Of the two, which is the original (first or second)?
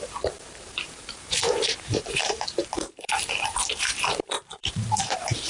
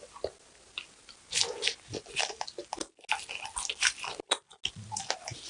second